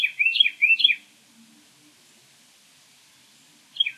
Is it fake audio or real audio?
real